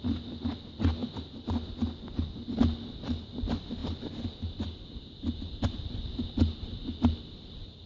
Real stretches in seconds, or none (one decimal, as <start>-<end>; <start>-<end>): 0.0-7.9